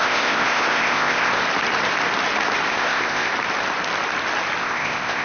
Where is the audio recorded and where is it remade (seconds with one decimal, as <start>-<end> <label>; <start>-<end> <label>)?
0.0-1.4 remade; 1.4-2.7 recorded; 2.7-3.3 remade; 3.3-4.6 recorded; 4.6-5.2 remade